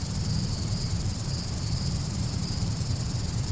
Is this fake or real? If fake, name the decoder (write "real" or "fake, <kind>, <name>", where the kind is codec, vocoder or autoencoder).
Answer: fake, vocoder, BigVGAN v2